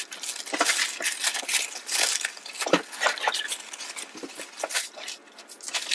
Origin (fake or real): real